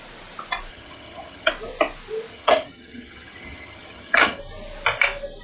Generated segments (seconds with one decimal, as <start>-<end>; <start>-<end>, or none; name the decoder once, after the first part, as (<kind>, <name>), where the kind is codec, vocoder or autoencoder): 0.7-1.5 (vocoder, HiFi-GAN); 2.3-4.4